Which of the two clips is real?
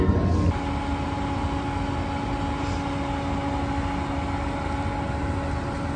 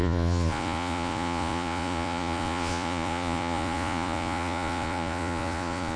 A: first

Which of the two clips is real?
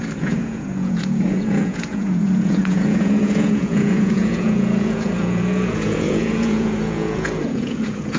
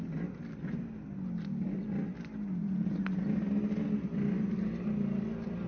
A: second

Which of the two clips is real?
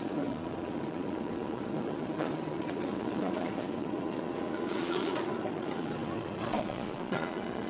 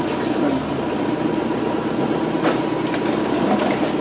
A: second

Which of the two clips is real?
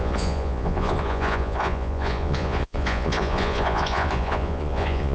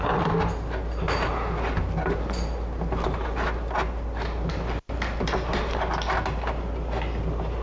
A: second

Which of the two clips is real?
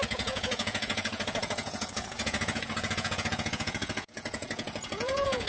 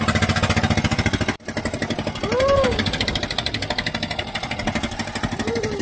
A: second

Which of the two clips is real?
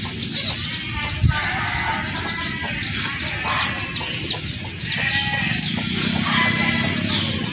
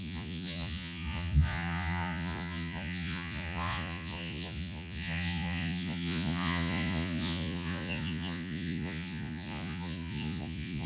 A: first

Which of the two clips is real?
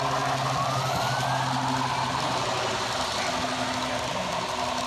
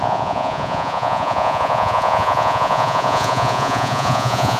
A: first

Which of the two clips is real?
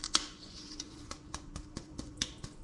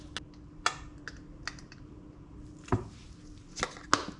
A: second